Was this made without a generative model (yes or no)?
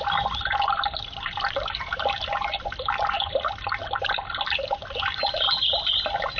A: yes